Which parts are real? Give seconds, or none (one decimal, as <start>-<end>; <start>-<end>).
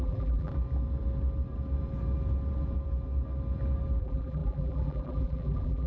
0.5-4.0